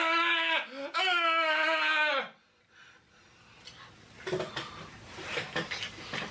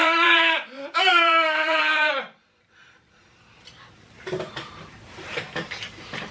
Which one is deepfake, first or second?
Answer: second